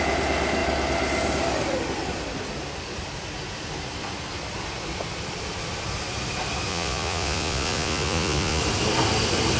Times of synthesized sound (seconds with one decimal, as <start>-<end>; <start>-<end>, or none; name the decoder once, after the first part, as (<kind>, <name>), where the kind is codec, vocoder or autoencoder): 6.7-8.6 (vocoder, Vocos)